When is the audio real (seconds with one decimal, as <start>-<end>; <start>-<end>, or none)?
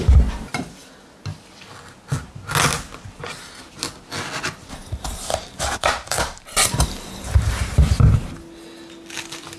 0.0-4.8; 8.3-9.6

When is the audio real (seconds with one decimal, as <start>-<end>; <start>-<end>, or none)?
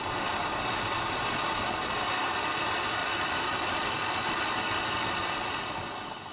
0.0-3.0; 4.4-6.3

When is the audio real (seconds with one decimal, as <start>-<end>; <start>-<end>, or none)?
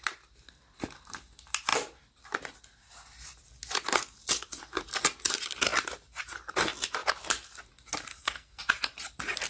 0.0-8.1; 8.6-9.5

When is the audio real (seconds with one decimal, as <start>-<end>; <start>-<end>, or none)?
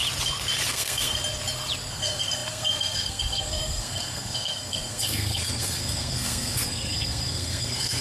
0.0-0.7; 1.2-1.9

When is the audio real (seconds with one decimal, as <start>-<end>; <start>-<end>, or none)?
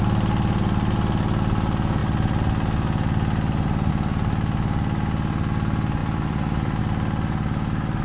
0.0-6.0; 6.8-8.0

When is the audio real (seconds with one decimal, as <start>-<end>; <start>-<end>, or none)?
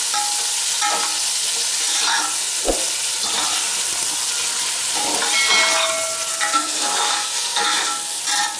0.0-6.3; 8.2-8.6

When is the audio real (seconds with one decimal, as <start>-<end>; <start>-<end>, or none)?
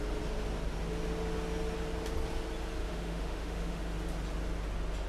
0.0-2.8; 3.8-5.1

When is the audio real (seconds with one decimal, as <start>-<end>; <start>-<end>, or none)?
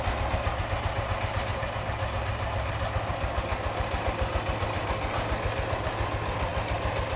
0.0-7.2